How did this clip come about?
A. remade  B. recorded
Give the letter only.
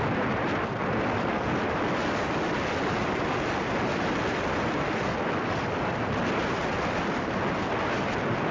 B